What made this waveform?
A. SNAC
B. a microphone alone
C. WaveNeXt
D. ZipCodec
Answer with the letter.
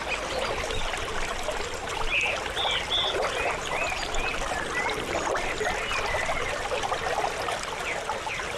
B